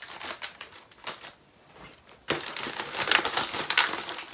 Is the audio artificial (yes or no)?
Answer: no